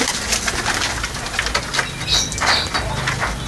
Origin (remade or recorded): recorded